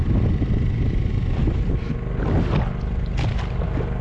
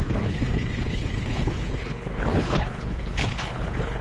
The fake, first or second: second